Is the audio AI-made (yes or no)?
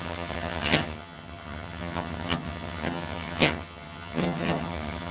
yes